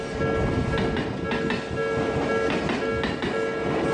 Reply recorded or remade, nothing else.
recorded